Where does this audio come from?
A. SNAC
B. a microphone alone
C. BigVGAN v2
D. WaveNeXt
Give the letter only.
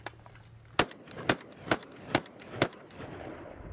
B